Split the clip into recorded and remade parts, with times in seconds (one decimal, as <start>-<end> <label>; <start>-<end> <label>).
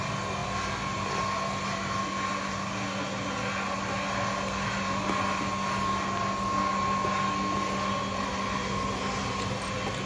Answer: 0.0-10.1 recorded